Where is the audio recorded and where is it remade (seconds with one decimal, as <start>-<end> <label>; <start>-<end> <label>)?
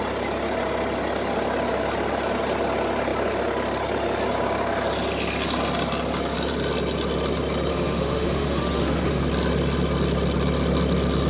0.0-7.7 recorded; 7.7-9.2 remade; 9.2-11.3 recorded